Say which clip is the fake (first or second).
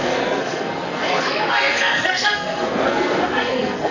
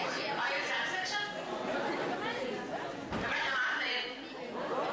first